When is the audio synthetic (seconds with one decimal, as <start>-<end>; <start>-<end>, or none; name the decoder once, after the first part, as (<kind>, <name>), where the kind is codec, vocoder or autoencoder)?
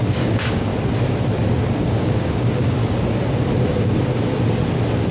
0.0-0.7 (codec, DAC); 1.5-2.8